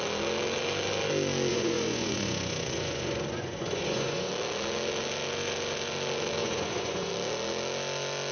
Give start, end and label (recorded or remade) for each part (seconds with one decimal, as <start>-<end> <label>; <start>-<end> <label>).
0.0-1.5 recorded; 1.5-4.3 remade; 4.3-6.4 recorded; 6.4-7.1 remade; 7.1-8.3 recorded